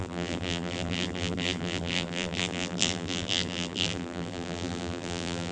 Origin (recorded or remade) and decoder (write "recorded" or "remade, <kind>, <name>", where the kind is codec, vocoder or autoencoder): remade, vocoder, BigVGAN v2